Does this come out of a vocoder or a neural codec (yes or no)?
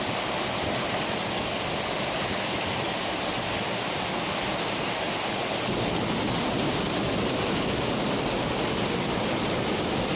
no